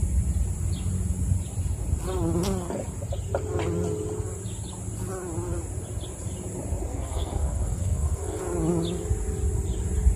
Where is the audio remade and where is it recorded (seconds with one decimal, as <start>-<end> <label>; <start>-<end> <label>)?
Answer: 0.0-6.9 recorded; 6.9-8.4 remade; 8.4-10.2 recorded